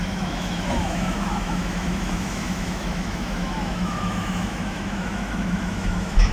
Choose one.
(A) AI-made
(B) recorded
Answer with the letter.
A